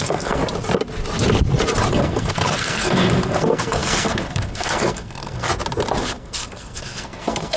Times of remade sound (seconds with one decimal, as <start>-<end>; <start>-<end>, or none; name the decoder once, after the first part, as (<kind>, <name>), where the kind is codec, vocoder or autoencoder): 0.0-0.4 (codec, SNAC); 1.9-5.5; 6.0-7.6